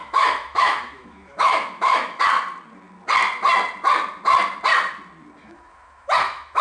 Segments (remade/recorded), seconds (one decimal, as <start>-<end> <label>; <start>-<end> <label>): 0.0-2.2 remade; 2.2-5.4 recorded; 5.4-6.6 remade